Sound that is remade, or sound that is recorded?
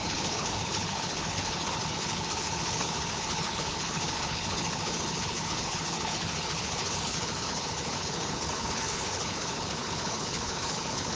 remade